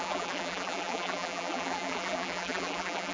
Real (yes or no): no